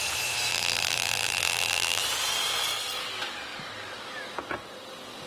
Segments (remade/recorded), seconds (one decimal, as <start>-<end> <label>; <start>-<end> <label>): 0.0-0.5 recorded; 0.5-2.0 remade; 2.0-5.3 recorded